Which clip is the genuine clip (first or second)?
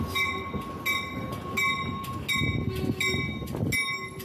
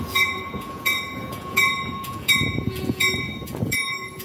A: first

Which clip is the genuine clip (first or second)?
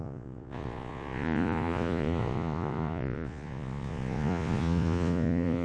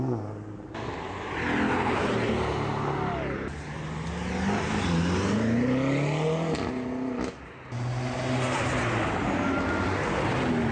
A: second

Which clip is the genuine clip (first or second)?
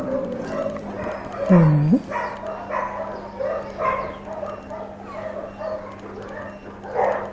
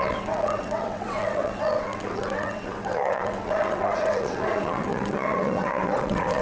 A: first